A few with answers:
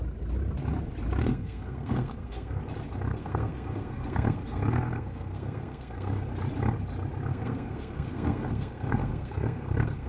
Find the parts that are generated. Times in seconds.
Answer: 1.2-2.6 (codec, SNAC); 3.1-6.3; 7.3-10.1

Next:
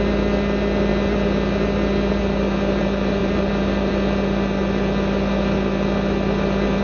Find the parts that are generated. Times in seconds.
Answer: none